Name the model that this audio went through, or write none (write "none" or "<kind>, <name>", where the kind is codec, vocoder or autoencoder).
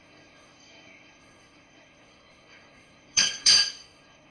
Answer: codec, SNAC